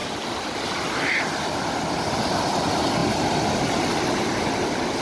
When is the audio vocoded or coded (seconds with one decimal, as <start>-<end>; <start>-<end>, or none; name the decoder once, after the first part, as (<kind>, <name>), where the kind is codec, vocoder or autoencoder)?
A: none